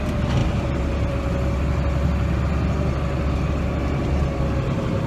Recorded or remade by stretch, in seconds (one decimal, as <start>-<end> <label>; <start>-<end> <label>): 0.0-5.1 recorded